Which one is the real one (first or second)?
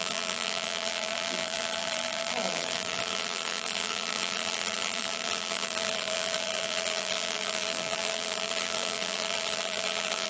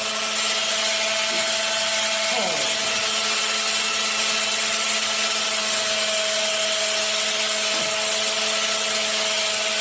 second